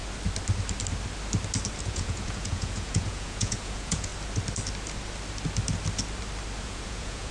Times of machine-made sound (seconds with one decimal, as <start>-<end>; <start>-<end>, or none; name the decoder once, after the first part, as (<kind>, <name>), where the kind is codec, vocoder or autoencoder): 1.8-4.1 (vocoder, Vocos); 6.6-7.3